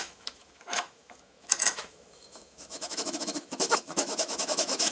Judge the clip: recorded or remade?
remade